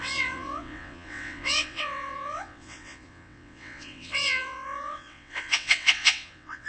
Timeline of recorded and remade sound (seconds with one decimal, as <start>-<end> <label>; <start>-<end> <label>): 0.0-6.7 remade